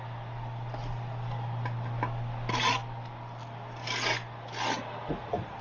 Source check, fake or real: real